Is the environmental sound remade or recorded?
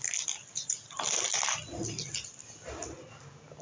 recorded